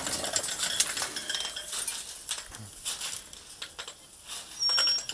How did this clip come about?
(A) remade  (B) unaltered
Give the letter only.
B